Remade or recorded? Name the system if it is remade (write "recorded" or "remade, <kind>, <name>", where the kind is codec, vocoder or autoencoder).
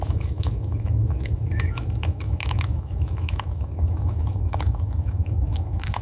remade, autoencoder, DAC-VAE